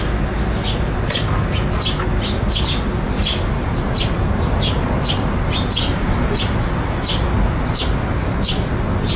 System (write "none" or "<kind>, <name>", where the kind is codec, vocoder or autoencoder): none